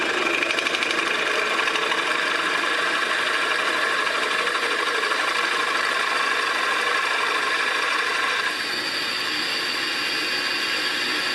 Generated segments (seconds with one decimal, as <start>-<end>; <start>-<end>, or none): none